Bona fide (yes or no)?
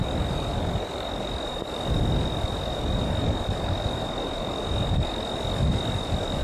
no